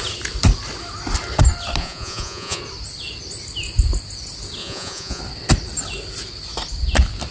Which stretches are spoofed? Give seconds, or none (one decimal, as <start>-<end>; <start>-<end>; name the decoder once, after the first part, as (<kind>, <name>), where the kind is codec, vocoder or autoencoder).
1.8-2.6 (vocoder, Vocos); 4.6-5.2